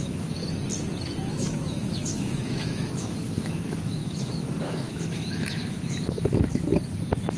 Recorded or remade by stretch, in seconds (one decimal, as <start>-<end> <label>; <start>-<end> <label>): 0.0-0.4 remade; 0.4-1.3 recorded; 1.3-6.7 remade; 6.7-7.4 recorded

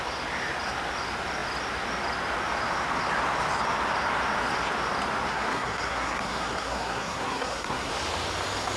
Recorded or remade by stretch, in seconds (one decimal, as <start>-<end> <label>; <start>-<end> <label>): 0.0-5.3 recorded; 5.3-7.9 remade; 7.9-8.8 recorded

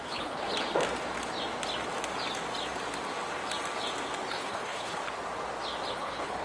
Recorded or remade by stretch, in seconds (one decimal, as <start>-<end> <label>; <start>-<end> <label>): 0.0-0.5 remade; 0.5-4.3 recorded; 4.3-5.0 remade; 5.0-5.9 recorded; 5.9-6.4 remade